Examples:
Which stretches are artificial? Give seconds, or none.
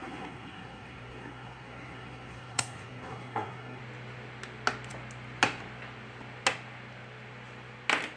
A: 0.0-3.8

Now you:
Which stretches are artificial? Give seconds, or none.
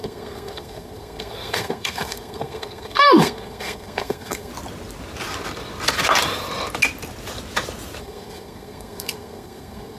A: 0.0-4.5; 8.0-10.0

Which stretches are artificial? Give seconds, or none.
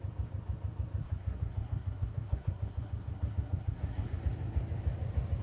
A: 1.0-4.2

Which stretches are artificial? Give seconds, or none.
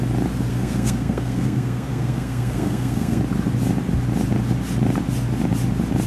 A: 0.5-3.2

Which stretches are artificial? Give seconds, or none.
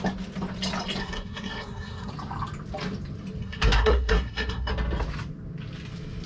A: 1.0-2.1; 3.4-4.7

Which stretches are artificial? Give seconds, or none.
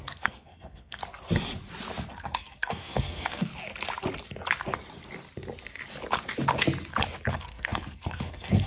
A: 0.0-1.0; 2.1-3.5; 7.3-8.7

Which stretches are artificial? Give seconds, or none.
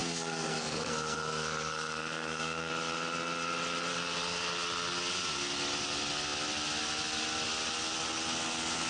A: 0.0-2.7